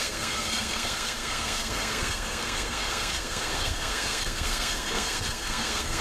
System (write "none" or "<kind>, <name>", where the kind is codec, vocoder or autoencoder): codec, SNAC